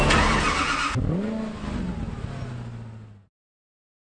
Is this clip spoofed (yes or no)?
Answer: no